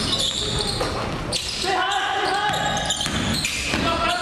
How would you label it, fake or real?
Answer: real